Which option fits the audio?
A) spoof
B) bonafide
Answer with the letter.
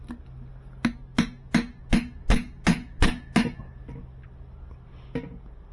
B